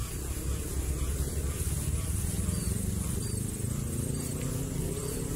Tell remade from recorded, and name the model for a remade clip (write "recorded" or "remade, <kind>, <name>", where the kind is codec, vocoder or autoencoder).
remade, vocoder, BigVGAN v2